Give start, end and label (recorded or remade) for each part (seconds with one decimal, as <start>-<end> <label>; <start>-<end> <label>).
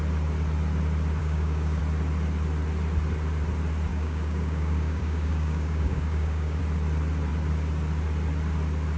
0.0-1.2 recorded; 1.2-1.8 remade; 1.8-3.9 recorded; 3.9-6.6 remade; 6.6-9.0 recorded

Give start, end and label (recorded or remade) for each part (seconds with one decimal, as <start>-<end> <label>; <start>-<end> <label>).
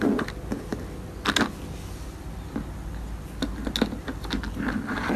0.0-5.2 recorded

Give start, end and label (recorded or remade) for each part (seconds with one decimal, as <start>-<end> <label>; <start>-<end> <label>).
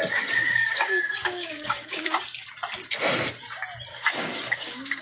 0.0-0.4 recorded; 0.4-2.2 remade; 2.2-3.9 recorded; 3.9-5.0 remade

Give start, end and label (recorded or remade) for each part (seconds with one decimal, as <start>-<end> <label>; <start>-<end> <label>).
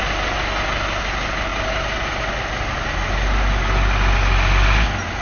0.0-5.2 recorded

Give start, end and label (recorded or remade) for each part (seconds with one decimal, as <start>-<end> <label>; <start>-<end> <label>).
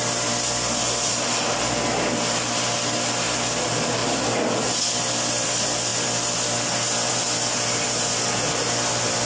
0.0-9.3 recorded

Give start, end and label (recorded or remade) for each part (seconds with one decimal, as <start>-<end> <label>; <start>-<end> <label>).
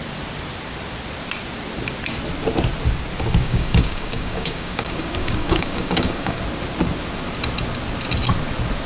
0.0-3.4 recorded; 3.4-6.4 remade; 6.4-8.9 recorded